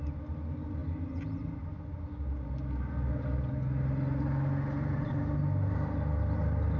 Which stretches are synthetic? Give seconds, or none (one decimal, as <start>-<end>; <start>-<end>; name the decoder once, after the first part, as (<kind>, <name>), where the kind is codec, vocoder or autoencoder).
none